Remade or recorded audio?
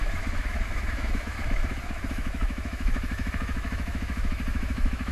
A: remade